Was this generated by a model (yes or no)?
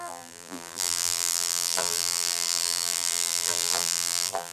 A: yes